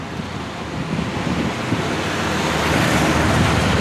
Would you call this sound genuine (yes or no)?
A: yes